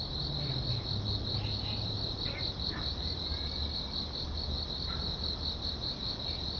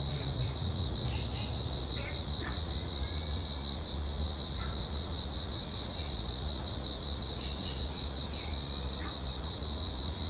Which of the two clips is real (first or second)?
first